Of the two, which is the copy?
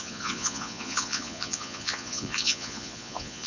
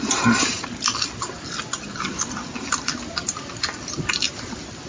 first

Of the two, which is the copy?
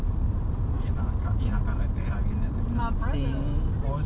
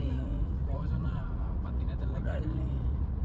second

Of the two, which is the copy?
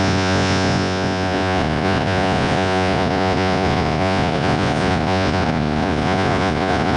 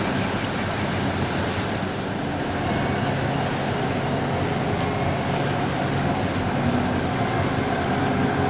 first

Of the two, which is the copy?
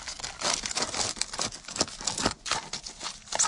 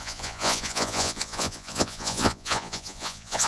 second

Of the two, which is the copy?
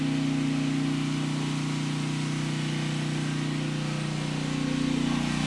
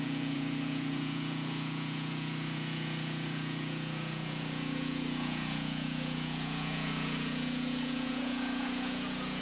second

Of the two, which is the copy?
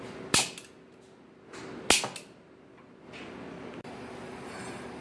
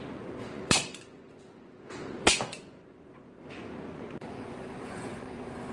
second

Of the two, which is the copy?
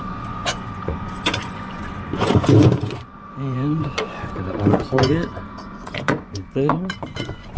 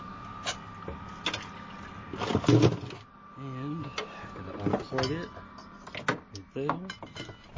first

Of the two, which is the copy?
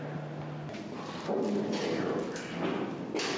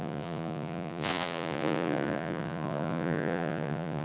second